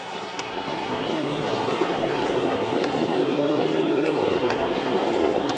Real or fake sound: fake